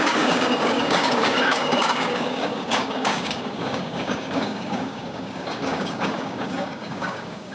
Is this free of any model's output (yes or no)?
no